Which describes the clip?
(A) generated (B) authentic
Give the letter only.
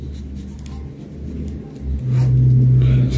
B